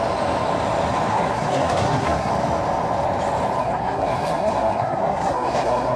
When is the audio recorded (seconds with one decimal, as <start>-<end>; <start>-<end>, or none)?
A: 0.0-1.1; 2.3-3.6